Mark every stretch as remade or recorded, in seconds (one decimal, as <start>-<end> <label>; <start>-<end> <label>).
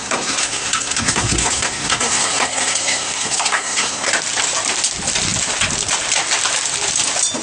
0.0-4.1 remade; 4.1-7.4 recorded